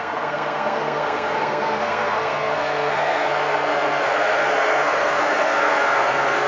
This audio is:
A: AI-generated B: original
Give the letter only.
A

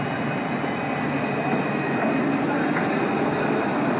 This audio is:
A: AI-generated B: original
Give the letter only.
B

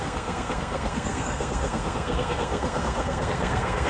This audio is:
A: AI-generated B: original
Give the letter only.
A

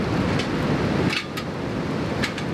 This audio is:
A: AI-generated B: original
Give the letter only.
B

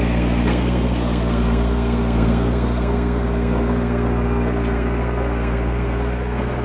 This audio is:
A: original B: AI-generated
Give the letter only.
B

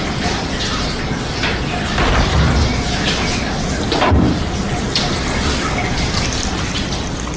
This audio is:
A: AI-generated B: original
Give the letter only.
B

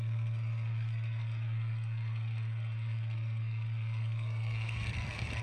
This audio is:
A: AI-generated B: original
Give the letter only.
A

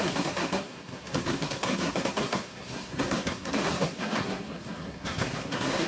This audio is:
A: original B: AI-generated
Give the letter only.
B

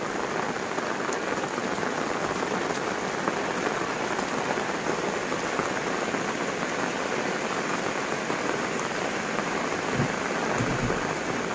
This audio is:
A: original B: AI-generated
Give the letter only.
A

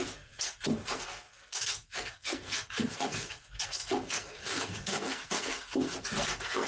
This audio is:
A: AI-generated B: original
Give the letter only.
A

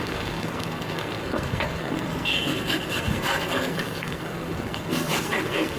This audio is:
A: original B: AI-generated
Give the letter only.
B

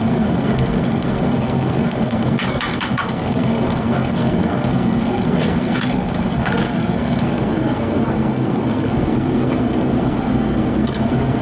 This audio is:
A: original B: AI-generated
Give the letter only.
B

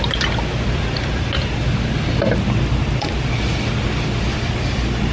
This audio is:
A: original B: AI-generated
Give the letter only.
A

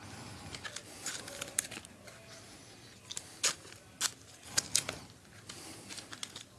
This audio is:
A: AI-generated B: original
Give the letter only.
B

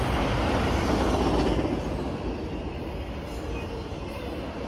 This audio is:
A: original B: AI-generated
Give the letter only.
A